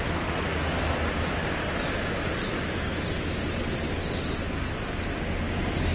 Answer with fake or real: real